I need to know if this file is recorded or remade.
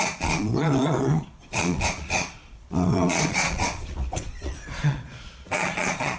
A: remade